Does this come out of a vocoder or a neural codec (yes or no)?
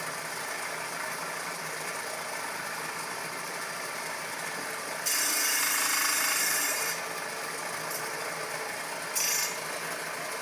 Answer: yes